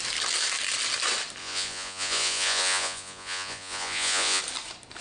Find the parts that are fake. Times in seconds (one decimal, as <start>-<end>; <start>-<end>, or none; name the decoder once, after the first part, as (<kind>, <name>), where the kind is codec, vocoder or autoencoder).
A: 1.4-4.4 (vocoder, Vocos)